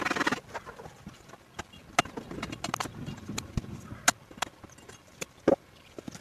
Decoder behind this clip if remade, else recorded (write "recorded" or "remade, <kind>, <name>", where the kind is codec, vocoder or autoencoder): recorded